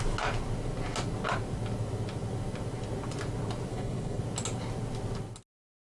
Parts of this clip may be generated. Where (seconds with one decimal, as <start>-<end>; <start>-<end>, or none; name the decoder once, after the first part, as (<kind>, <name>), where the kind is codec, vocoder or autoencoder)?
3.7-4.2 (codec, HILCodec)